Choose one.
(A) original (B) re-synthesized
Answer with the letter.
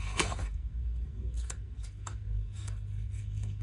B